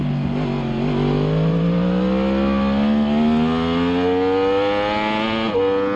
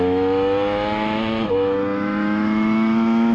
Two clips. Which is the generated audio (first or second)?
second